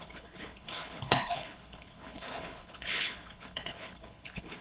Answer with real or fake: fake